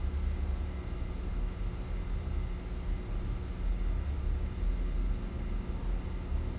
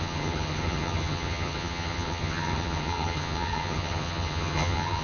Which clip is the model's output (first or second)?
second